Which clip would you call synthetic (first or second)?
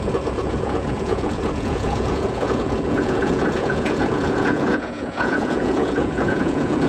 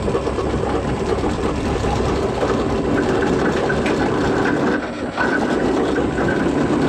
first